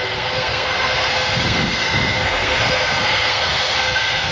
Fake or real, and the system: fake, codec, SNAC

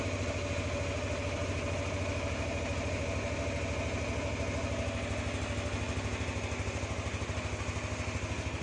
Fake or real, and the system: real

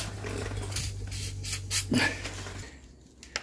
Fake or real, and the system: real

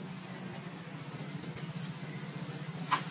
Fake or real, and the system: real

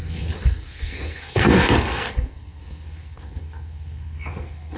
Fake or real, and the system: fake, codec, SNAC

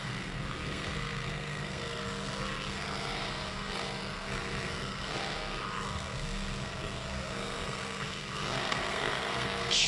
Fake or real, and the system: fake, codec, SNAC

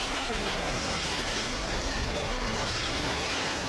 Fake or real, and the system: fake, codec, SNAC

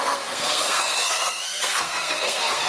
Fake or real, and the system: fake, codec, SNAC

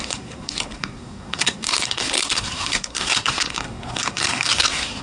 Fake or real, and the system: fake, codec, SNAC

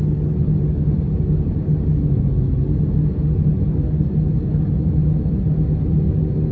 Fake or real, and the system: real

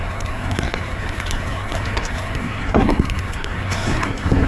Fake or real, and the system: fake, codec, SNAC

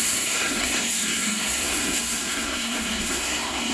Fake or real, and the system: fake, codec, SNAC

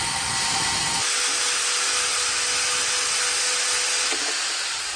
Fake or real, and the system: real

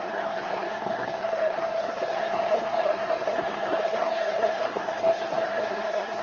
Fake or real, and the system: fake, codec, SNAC